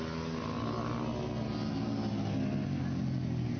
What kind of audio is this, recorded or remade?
recorded